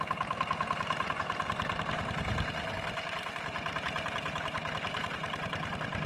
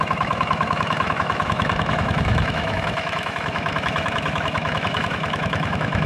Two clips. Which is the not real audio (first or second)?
second